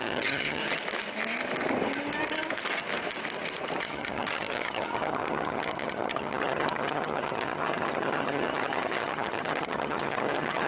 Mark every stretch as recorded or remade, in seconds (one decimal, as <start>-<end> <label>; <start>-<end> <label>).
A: 0.0-0.6 remade; 0.6-3.8 recorded; 3.8-10.7 remade